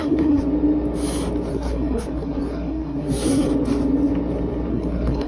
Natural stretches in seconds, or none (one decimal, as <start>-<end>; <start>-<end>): 0.4-1.5; 3.5-4.7